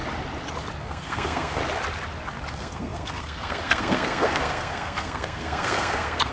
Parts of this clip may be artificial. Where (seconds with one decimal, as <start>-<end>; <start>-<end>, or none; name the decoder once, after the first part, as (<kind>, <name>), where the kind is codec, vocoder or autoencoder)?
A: 0.8-1.6 (codec, SNAC); 2.5-6.3